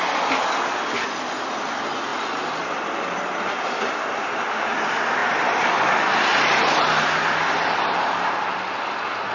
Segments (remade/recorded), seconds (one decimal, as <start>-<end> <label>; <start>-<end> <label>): 0.0-9.3 recorded